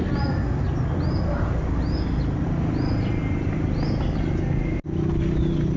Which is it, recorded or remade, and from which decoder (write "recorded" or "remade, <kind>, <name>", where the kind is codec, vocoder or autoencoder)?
recorded